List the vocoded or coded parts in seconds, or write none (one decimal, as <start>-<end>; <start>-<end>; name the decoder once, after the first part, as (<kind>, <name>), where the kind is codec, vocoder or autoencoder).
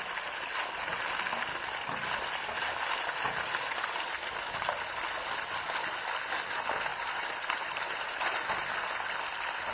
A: 6.9-8.3 (vocoder, BigVGAN v2)